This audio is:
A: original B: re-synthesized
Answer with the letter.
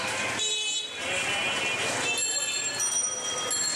A